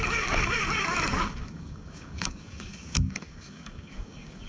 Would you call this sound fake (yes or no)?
yes